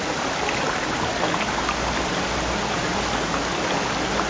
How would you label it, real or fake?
real